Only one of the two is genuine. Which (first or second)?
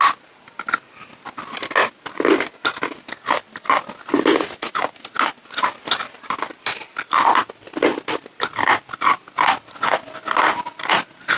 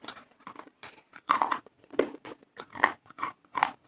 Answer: first